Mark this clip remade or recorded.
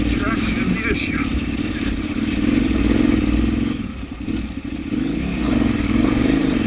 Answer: recorded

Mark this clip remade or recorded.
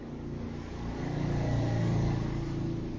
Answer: remade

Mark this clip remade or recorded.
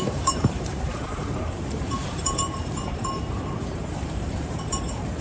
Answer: remade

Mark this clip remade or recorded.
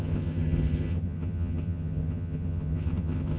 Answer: remade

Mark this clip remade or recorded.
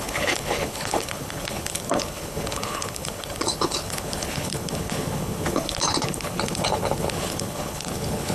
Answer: remade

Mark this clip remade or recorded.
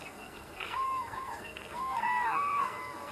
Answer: remade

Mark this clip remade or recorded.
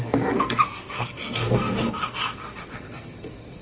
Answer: remade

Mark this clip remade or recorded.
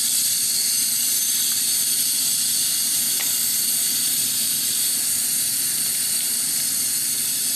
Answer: recorded